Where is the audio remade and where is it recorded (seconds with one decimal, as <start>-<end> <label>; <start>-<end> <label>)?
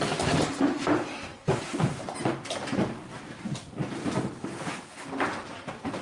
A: 0.0-1.3 recorded; 1.3-4.3 remade; 4.3-6.0 recorded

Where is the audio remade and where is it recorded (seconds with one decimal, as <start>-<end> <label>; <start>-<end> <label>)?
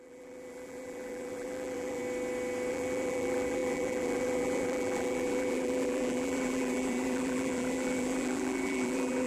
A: 0.0-2.0 remade; 2.0-2.7 recorded; 2.7-9.3 remade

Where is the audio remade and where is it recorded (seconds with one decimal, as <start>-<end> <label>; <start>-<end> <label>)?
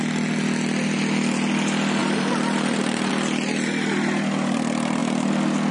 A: 0.0-2.0 recorded; 2.0-3.1 remade; 3.1-5.7 recorded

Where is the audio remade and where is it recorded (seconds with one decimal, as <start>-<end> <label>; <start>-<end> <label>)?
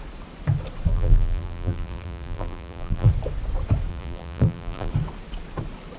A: 0.0-0.9 recorded; 0.9-3.1 remade; 3.1-3.9 recorded; 3.9-4.9 remade; 4.9-6.0 recorded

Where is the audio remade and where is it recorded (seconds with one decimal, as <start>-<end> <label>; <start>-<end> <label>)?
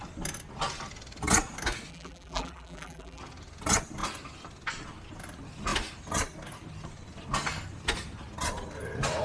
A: 0.0-1.9 recorded; 1.9-3.2 remade; 3.2-9.2 recorded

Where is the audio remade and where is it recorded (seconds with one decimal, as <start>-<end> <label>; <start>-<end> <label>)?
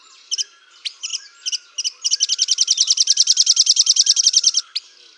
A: 0.0-5.2 recorded